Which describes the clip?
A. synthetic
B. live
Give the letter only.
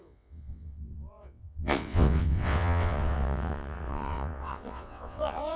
A